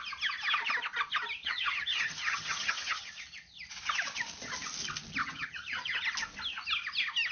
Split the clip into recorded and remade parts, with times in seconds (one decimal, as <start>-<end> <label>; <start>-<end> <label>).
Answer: 0.0-1.4 recorded; 1.4-3.1 remade; 3.1-5.2 recorded; 5.2-6.0 remade; 6.0-7.3 recorded

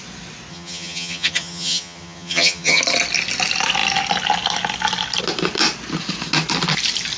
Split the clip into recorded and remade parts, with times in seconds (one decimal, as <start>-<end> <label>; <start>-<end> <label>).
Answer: 0.0-0.5 recorded; 0.5-2.8 remade; 2.8-7.2 recorded

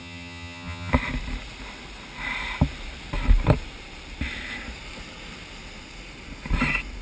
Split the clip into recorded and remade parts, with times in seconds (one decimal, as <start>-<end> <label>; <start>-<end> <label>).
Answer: 0.0-0.9 remade; 0.9-7.0 recorded

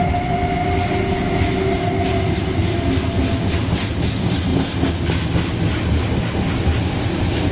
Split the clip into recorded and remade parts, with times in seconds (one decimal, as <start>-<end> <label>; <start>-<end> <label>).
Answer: 0.0-7.5 recorded

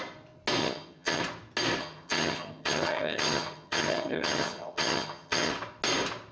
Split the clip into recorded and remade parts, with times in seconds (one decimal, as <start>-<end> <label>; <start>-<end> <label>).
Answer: 0.0-0.6 recorded; 0.6-1.2 remade; 1.2-1.8 recorded; 1.8-5.5 remade; 5.5-6.3 recorded

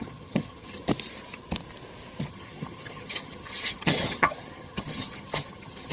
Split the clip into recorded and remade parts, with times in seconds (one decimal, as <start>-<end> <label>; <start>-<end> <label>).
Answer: 0.0-0.8 remade; 0.8-2.3 recorded; 2.3-5.9 remade

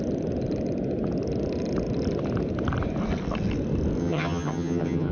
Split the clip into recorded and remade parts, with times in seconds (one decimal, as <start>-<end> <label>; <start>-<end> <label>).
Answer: 0.0-4.0 recorded; 4.0-5.1 remade